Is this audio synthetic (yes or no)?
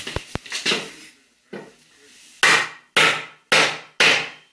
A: no